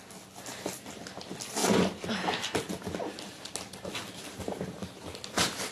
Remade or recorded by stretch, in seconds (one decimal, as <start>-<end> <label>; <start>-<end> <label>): 0.0-5.7 recorded